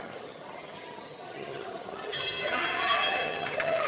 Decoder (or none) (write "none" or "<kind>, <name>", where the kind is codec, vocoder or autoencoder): vocoder, HiFi-GAN